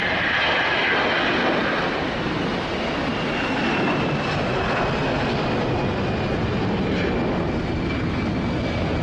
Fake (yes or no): no